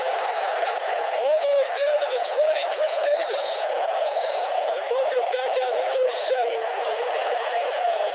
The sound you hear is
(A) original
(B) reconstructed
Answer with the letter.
B